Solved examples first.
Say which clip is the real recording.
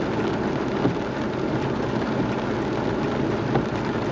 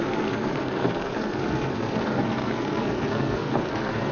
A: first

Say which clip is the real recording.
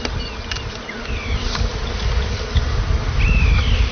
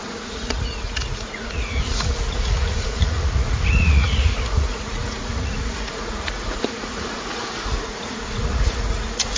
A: first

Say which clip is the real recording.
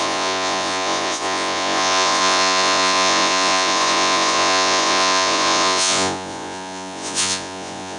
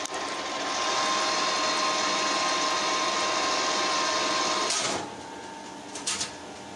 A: second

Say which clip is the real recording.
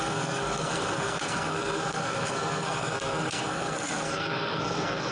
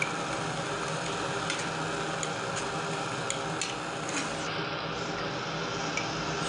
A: second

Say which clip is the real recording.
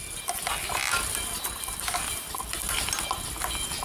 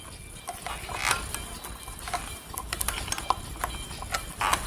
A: second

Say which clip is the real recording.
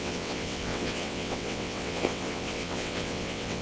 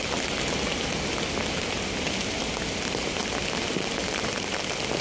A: second